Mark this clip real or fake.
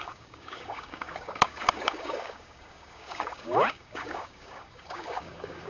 fake